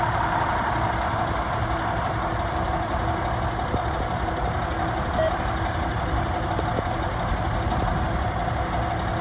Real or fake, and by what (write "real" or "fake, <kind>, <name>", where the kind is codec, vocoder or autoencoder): real